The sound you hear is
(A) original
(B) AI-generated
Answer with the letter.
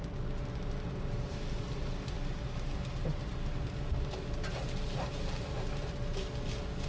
A